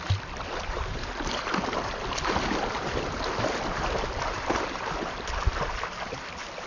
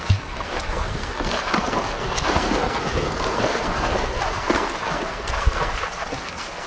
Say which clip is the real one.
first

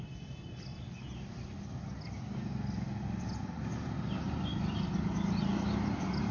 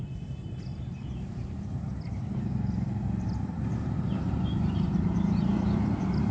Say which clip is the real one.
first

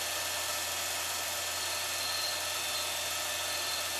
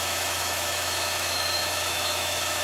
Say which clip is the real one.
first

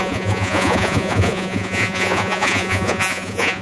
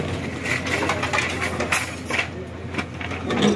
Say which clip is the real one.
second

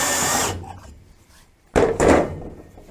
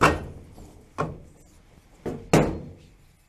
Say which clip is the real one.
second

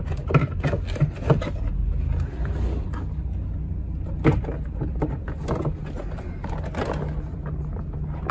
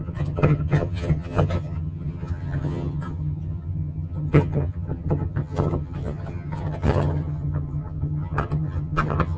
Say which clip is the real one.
first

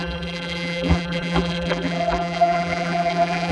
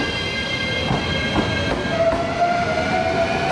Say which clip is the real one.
second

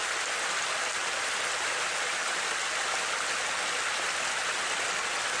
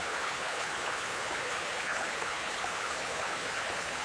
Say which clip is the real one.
first